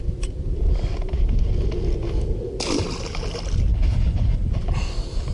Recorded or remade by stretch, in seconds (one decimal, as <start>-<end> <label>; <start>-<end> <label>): 0.0-3.7 recorded; 3.7-4.5 remade; 4.5-5.3 recorded